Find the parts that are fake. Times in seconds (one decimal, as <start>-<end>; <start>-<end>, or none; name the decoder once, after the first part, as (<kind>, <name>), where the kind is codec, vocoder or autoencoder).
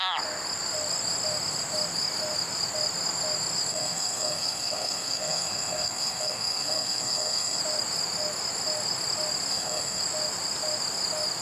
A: 3.7-7.6 (codec, SNAC); 9.5-10.0